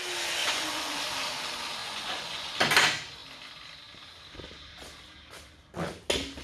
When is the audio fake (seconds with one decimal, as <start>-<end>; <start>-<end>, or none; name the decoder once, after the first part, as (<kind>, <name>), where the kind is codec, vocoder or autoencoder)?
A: 0.4-1.0 (vocoder, Vocos); 1.8-2.5